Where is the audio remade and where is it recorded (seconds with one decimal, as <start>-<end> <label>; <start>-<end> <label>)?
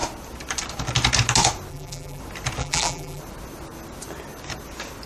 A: 0.0-1.7 recorded; 1.7-2.2 remade; 2.2-2.6 recorded; 2.6-3.2 remade; 3.2-5.1 recorded